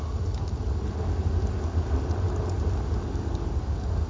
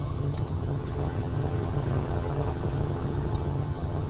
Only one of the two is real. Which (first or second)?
first